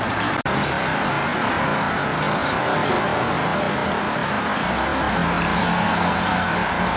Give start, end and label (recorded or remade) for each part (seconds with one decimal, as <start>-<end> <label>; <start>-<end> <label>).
0.0-5.6 recorded; 5.6-6.5 remade; 6.5-7.0 recorded